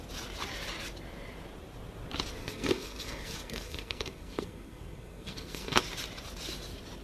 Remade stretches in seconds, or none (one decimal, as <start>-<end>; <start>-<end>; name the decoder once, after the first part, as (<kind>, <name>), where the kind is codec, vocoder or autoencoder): 2.4-5.8 (codec, SNAC)